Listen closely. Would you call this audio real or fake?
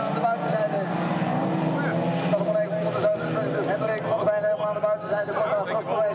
real